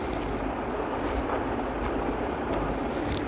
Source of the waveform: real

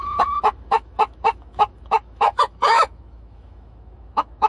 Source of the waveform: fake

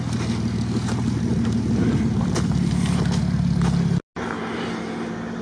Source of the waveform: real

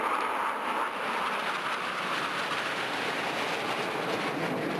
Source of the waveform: real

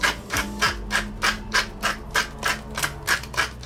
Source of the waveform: real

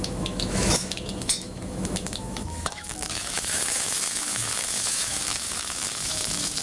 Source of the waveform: fake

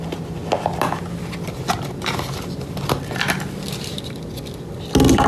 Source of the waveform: real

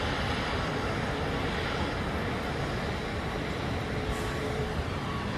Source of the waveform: real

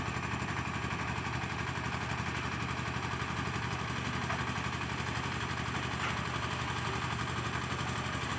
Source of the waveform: real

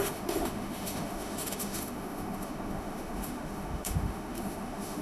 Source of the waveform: fake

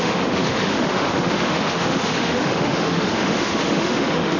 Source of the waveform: fake